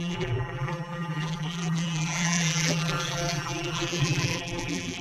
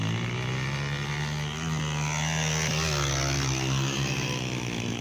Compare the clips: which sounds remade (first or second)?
first